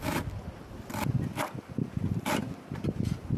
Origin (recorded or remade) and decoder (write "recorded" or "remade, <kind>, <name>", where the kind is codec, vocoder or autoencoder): recorded